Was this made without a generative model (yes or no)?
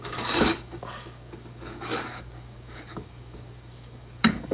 no